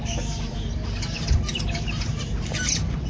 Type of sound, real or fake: fake